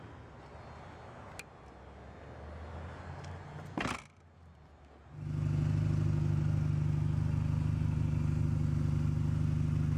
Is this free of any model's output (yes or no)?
yes